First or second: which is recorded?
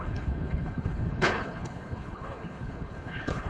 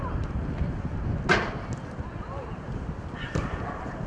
second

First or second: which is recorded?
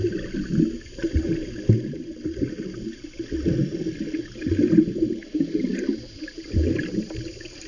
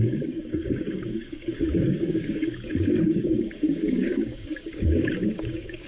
first